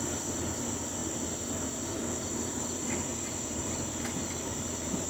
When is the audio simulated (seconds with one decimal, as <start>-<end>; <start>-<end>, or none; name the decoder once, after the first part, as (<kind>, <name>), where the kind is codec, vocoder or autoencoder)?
3.1-5.1 (vocoder, BigVGAN v2)